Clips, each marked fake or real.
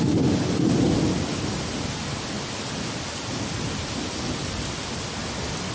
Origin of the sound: real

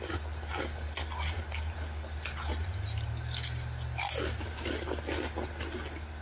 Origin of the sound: real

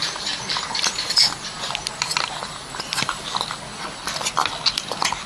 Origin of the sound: real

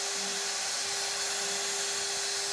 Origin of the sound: real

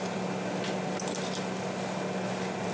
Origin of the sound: real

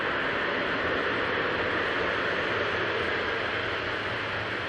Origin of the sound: real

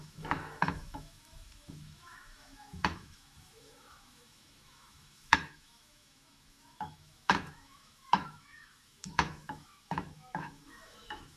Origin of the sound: fake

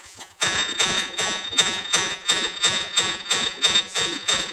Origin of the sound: fake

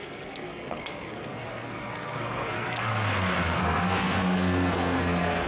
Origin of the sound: fake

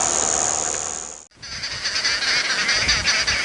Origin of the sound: real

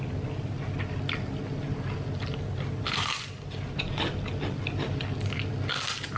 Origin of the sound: real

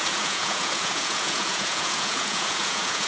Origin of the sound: fake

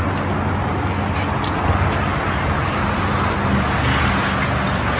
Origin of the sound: real